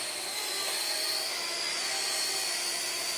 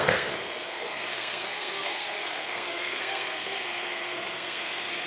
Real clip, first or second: first